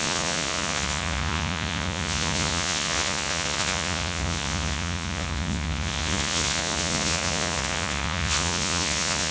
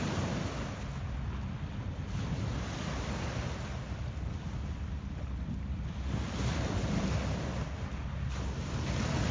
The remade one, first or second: first